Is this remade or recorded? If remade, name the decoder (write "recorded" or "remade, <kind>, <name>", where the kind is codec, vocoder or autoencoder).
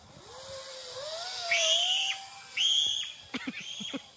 recorded